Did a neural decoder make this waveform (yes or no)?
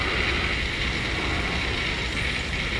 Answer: no